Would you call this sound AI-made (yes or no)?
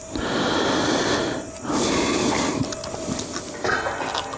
no